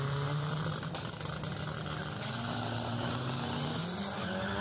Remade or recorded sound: recorded